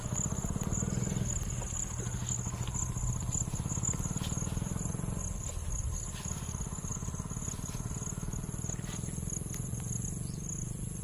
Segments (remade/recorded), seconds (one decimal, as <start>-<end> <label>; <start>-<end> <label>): 0.0-11.0 recorded

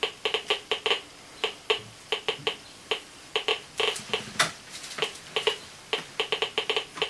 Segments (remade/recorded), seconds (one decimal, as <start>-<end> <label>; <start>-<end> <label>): 0.0-7.1 recorded

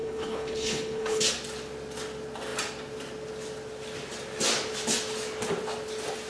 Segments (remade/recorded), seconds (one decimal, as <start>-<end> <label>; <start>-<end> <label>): 0.0-1.2 remade; 1.2-6.3 recorded

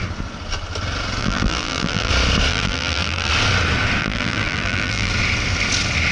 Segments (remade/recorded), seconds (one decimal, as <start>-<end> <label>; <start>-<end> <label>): 0.0-1.2 recorded; 1.2-2.1 remade; 2.1-2.5 recorded; 2.5-3.3 remade; 3.3-4.0 recorded; 4.0-5.1 remade; 5.1-6.1 recorded

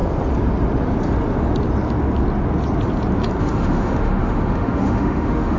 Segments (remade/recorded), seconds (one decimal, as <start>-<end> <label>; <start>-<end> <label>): 0.0-3.4 recorded; 3.4-5.6 remade

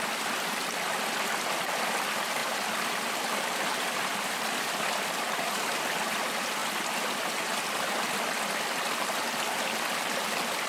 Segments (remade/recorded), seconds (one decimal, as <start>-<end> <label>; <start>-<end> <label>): 0.0-2.4 recorded; 2.4-5.9 remade; 5.9-10.7 recorded